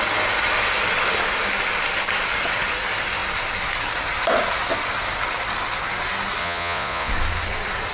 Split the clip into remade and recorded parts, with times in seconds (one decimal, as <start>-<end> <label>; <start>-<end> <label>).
0.0-6.4 recorded; 6.4-7.1 remade; 7.1-7.9 recorded